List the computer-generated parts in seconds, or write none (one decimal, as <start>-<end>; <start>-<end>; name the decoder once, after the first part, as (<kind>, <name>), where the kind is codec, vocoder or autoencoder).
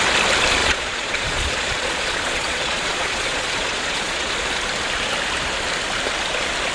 0.6-4.3 (vocoder, Vocos)